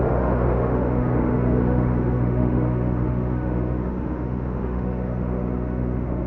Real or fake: fake